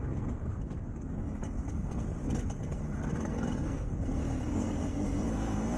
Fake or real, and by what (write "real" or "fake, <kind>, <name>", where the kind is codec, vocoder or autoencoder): fake, codec, SNAC